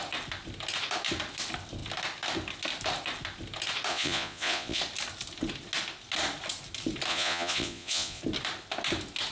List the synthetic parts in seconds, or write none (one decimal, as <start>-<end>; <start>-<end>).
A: 3.9-4.8; 7.1-8.2